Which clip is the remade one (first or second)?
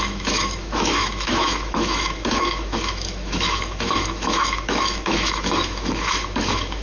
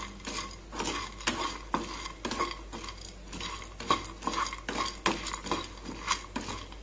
first